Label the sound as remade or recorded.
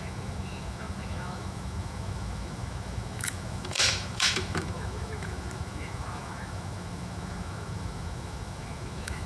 remade